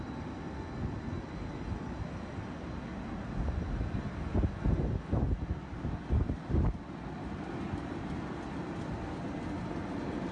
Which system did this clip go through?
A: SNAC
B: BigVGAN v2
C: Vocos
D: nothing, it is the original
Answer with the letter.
D